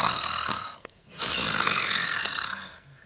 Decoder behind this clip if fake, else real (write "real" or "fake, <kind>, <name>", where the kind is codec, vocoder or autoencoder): fake, codec, SNAC